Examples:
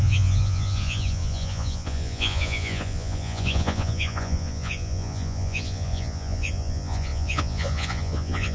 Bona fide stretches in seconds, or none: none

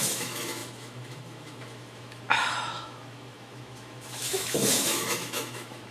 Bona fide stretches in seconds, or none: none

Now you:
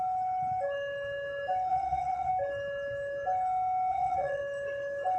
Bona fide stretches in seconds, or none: 0.0-1.7; 2.3-3.9; 4.4-5.2

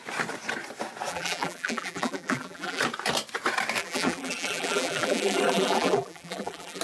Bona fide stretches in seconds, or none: 0.0-1.1; 2.8-3.8

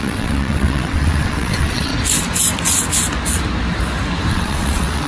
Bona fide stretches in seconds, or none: 1.9-4.3